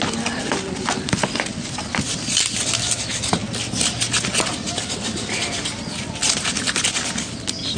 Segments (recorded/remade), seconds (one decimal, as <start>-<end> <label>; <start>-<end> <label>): 0.0-7.8 recorded

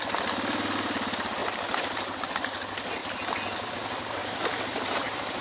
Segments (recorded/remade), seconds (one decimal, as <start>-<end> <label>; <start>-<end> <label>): 0.0-4.2 recorded; 4.2-5.4 remade

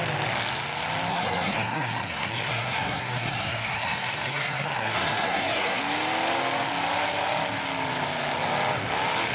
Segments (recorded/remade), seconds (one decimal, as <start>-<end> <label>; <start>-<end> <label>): 0.0-1.1 recorded; 1.1-5.8 remade; 5.8-9.3 recorded

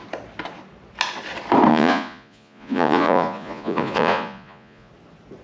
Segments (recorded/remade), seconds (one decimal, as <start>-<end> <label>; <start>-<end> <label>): 0.0-1.7 recorded; 1.7-4.9 remade; 4.9-5.4 recorded